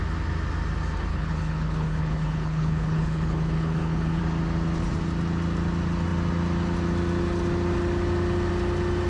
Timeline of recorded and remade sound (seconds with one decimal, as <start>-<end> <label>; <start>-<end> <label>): 0.0-1.1 recorded; 1.1-4.2 remade; 4.2-9.1 recorded